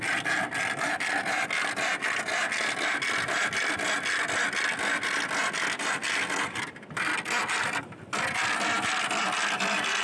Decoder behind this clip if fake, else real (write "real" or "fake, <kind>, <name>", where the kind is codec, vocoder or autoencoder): real